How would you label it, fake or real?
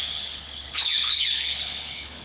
fake